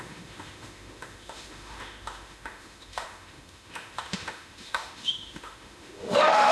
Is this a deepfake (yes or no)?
yes